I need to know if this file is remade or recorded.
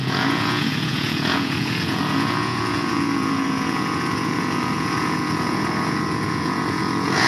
remade